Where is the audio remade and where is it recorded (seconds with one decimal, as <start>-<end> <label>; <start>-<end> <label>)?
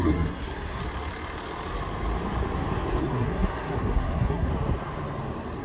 0.0-0.8 remade; 0.8-3.0 recorded; 3.0-4.5 remade; 4.5-5.6 recorded